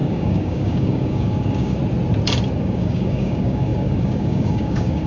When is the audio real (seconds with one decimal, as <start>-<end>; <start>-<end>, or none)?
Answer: 1.8-2.6